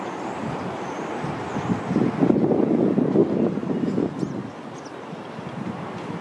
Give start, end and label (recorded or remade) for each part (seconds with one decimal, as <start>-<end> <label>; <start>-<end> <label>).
0.0-6.2 recorded